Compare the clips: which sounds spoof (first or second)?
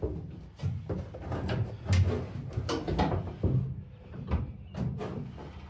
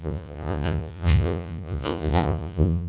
second